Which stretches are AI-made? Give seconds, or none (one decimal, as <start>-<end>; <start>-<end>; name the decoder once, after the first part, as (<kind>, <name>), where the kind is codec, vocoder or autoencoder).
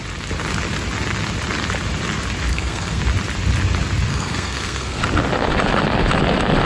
2.5-3.0 (codec, SNAC); 4.1-5.0